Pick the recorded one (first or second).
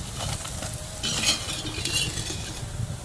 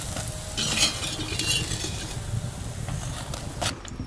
second